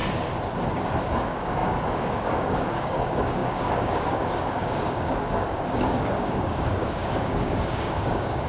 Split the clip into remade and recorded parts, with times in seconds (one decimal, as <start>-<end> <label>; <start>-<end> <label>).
0.0-1.0 recorded; 1.0-8.5 remade